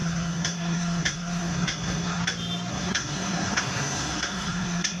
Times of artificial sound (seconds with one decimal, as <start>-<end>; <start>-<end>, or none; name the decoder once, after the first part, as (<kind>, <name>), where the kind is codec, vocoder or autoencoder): 0.0-2.2 (codec, SNAC); 2.7-5.0